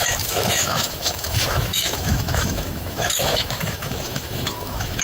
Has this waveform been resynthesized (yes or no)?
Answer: yes